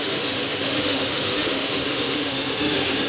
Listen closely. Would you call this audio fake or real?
fake